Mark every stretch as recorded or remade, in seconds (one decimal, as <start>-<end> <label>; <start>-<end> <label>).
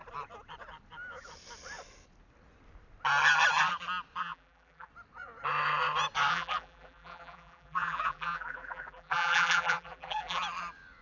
0.0-4.2 recorded; 4.2-4.9 remade; 4.9-6.3 recorded; 6.3-10.4 remade; 10.4-11.0 recorded